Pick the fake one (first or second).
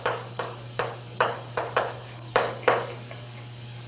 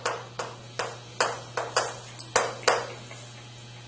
first